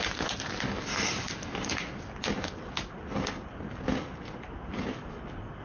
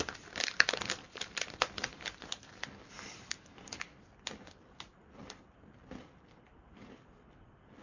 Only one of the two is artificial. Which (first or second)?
second